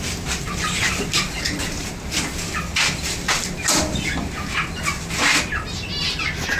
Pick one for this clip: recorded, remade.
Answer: recorded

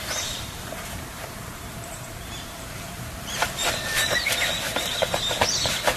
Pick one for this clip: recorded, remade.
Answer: remade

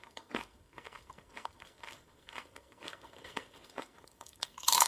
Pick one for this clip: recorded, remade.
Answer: remade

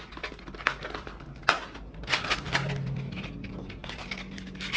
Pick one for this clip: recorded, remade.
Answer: recorded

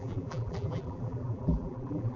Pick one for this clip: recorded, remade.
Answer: remade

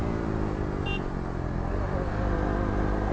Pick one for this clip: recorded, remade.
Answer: recorded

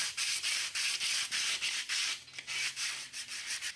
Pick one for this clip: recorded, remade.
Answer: recorded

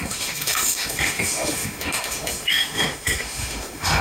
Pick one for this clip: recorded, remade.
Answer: remade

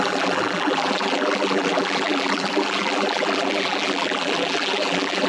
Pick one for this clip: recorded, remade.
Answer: remade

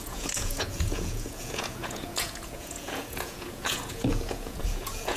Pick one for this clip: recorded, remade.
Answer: remade